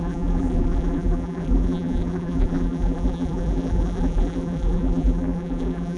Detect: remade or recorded remade